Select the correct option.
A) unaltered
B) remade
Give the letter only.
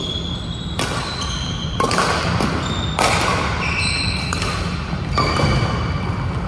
A